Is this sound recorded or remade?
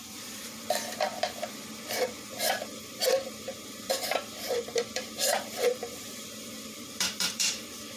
remade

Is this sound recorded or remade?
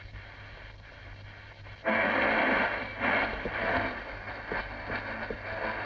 recorded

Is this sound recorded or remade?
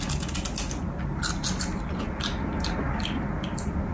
recorded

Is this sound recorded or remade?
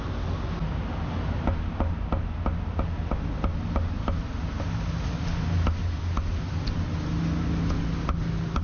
recorded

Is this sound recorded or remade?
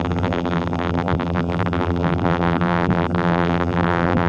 remade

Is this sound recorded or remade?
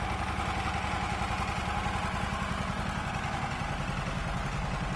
recorded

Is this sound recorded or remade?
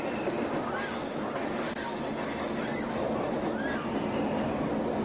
recorded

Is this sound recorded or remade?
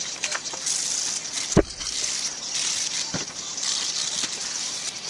remade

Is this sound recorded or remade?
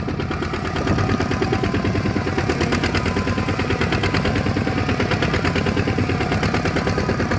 recorded